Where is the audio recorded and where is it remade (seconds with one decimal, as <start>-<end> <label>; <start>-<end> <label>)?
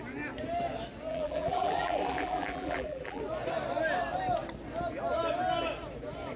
0.0-1.1 recorded; 1.1-3.2 remade; 3.2-6.4 recorded